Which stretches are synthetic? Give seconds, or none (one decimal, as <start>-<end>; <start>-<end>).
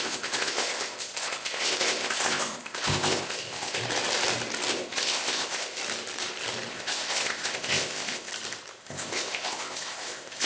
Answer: 0.0-3.8; 4.7-5.8; 6.7-8.3; 8.8-10.5